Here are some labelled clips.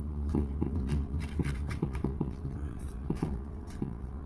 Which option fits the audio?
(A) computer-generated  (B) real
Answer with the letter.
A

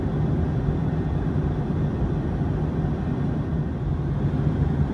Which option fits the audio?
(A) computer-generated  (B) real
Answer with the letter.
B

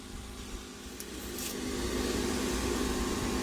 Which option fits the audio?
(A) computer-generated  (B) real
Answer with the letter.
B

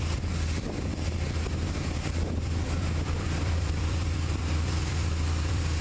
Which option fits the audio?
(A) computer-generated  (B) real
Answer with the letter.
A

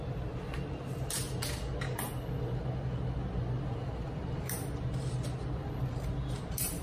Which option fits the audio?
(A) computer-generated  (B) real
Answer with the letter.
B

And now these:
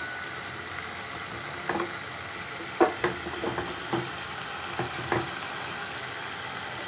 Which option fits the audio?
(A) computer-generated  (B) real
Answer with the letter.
B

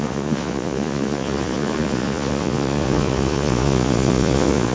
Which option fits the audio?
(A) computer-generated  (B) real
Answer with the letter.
A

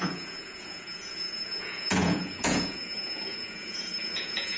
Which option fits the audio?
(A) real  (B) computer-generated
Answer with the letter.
B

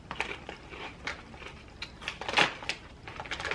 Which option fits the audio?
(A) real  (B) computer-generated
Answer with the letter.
A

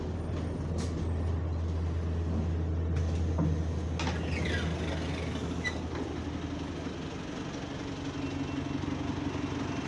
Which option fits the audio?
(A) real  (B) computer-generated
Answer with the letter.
A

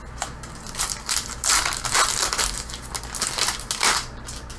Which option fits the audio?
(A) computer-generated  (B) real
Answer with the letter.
B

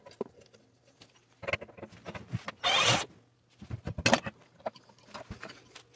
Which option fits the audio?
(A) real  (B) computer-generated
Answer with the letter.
A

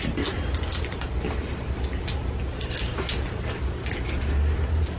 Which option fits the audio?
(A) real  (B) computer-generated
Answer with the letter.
A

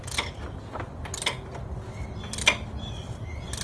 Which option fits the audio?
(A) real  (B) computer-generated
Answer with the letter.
A